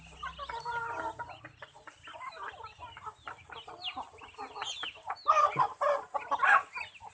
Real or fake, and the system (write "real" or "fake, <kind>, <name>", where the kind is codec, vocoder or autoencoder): real